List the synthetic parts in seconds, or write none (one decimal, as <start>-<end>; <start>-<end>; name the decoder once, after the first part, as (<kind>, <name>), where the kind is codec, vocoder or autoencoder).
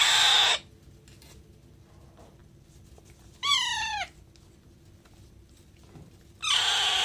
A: none